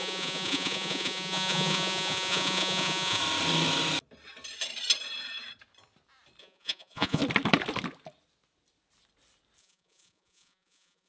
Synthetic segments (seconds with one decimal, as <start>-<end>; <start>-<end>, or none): 0.0-3.2; 6.4-7.2; 9.6-11.1